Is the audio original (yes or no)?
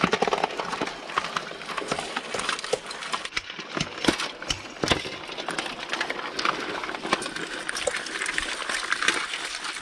yes